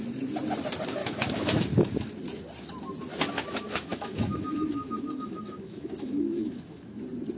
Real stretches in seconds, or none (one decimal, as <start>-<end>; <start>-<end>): 0.0-1.0; 2.1-3.1; 7.0-7.4